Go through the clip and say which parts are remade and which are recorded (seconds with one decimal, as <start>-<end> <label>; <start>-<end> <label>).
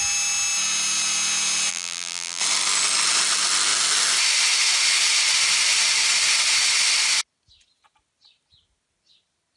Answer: 0.0-1.7 recorded; 1.7-2.4 remade; 2.4-9.6 recorded